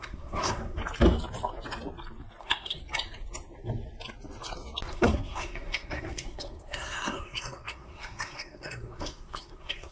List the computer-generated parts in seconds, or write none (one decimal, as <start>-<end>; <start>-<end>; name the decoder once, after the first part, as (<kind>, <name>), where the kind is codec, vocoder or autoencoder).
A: 0.0-0.8 (codec, SNAC); 2.4-2.8; 4.9-9.9

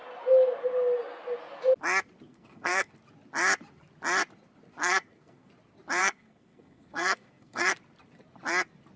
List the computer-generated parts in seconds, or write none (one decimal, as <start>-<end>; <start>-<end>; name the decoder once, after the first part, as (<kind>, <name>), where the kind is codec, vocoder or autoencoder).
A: 2.3-2.9 (codec, SNAC); 4.8-5.5; 6.0-7.7

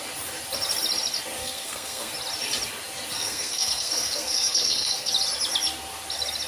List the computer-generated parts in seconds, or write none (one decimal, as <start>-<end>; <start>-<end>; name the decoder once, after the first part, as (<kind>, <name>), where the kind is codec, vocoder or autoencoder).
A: 1.4-2.1 (codec, SNAC); 3.1-5.1

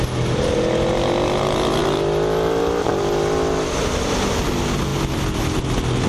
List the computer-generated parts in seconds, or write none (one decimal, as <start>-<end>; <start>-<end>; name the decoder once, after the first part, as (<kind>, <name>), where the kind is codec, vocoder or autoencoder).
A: none

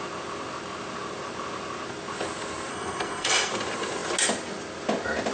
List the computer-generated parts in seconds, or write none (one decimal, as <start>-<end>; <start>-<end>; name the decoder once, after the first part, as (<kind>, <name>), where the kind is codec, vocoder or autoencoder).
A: 2.7-3.5 (codec, SNAC)

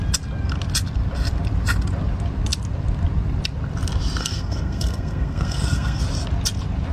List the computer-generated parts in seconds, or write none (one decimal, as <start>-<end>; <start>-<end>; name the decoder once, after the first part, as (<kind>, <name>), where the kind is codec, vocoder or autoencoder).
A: 4.2-6.0 (codec, SNAC)